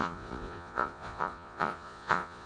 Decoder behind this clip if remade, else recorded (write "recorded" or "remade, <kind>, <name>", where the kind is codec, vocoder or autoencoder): remade, vocoder, Vocos